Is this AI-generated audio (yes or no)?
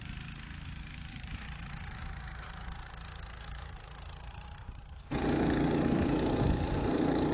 yes